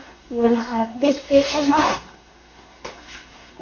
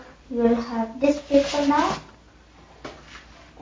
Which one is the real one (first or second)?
second